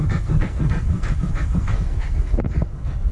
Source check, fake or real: fake